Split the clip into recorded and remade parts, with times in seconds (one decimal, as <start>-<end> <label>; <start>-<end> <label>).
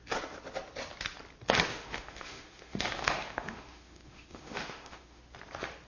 0.0-1.7 recorded; 1.7-5.2 remade; 5.2-5.9 recorded